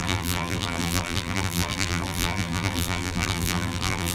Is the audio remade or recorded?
remade